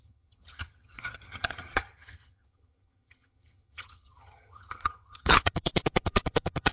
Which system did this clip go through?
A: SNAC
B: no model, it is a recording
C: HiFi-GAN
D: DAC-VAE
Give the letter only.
C